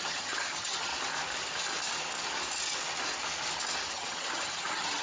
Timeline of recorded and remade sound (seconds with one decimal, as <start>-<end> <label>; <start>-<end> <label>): 0.0-0.9 remade; 0.9-3.9 recorded; 3.9-5.0 remade